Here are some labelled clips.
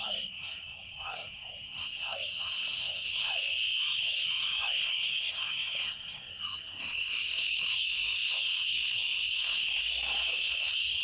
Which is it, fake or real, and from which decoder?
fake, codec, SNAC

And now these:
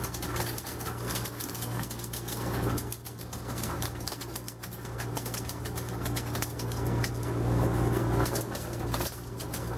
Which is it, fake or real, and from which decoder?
fake, codec, SNAC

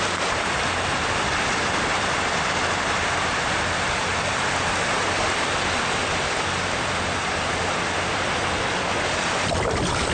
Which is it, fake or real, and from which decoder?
fake, vocoder, BigVGAN v2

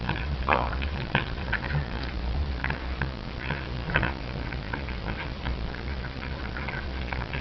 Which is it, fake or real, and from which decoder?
fake, vocoder, Vocos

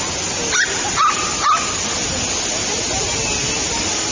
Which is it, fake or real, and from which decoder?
real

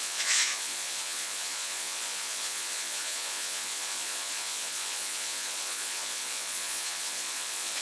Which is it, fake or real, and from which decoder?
fake, vocoder, Vocos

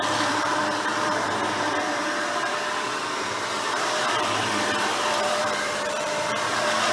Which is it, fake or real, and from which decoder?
fake, vocoder, BigVGAN v2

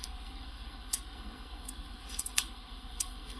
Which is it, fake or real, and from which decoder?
fake, codec, SNAC